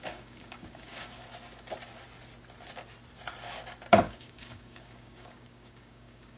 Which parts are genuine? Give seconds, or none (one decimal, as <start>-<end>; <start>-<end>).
1.2-3.9